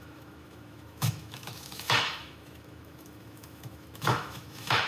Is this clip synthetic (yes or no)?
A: yes